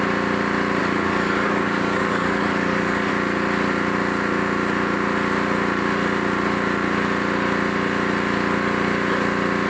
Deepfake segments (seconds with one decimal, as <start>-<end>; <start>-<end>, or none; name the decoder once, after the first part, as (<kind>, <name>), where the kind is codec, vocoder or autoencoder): 0.8-3.1 (codec, DAC)

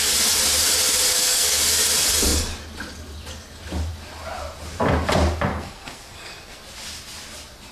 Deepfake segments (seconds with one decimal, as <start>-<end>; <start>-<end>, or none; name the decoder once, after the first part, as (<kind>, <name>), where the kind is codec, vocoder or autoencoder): 1.1-1.6 (codec, SNAC); 5.5-6.6

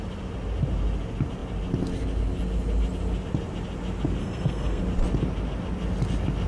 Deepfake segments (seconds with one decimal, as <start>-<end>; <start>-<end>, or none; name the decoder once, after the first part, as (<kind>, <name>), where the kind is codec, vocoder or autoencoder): 4.2-4.8 (codec, SNAC)

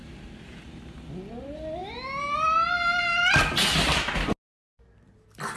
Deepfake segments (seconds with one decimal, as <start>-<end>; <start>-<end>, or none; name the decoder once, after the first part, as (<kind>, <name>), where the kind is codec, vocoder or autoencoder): 0.0-0.8 (vocoder, BigVGAN v2)

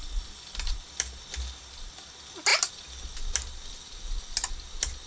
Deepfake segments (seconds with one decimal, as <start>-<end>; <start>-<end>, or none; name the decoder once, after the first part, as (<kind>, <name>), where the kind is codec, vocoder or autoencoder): none

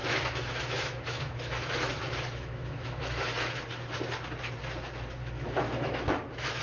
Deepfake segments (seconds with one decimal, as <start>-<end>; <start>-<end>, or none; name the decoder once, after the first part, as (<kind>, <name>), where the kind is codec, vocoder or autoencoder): 0.0-3.6 (autoencoder, DAC-VAE); 5.2-6.6